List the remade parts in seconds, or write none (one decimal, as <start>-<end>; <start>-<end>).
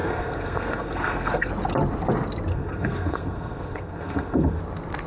0.0-1.5; 2.5-4.6